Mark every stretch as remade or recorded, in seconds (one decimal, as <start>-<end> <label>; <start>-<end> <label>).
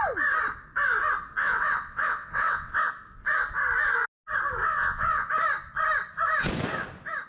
0.0-1.4 recorded; 1.4-2.9 remade; 2.9-4.6 recorded; 4.6-5.3 remade; 5.3-7.3 recorded